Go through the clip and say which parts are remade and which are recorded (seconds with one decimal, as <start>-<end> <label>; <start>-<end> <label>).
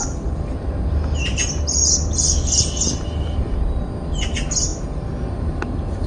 0.0-6.1 recorded